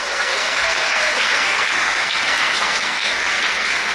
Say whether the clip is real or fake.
fake